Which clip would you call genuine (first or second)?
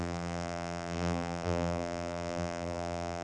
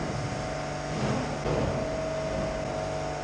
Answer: second